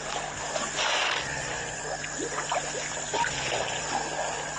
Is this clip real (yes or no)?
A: yes